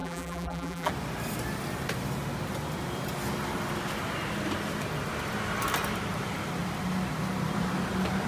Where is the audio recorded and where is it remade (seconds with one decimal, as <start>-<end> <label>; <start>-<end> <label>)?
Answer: 0.0-0.9 remade; 0.9-8.3 recorded